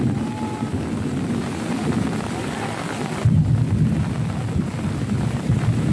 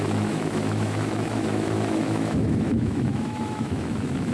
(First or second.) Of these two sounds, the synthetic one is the second